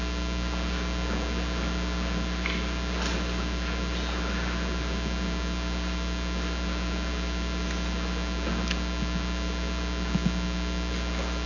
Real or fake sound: real